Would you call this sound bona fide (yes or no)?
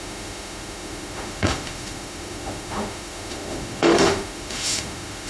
no